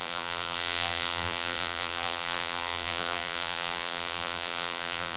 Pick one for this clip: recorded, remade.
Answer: remade